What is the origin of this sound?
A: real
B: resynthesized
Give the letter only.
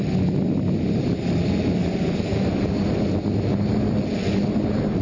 A